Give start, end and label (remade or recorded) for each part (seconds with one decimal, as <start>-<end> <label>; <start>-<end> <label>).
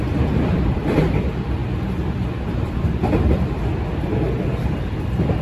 0.0-1.6 remade; 1.6-4.8 recorded; 4.8-5.4 remade